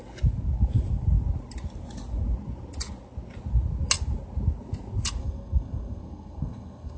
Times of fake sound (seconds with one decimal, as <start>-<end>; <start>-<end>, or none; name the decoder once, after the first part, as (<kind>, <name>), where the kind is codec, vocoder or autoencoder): 5.2-7.0 (codec, SNAC)